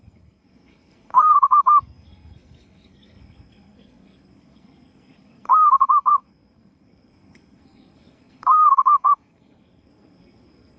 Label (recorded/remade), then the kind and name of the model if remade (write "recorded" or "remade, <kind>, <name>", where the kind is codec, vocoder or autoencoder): remade, codec, SNAC